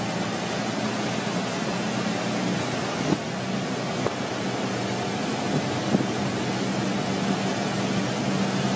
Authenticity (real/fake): real